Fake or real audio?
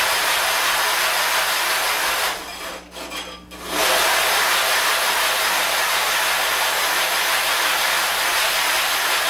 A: real